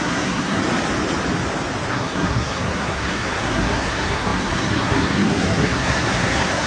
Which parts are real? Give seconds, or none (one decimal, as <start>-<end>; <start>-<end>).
0.6-1.9